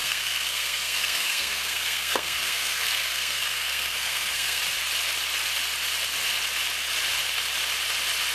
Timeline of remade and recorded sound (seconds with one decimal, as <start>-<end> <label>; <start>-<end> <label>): 0.0-4.6 remade; 4.6-8.3 recorded